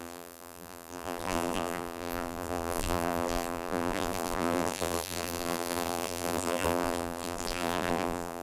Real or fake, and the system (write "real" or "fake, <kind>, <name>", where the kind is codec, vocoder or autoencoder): fake, vocoder, BigVGAN v2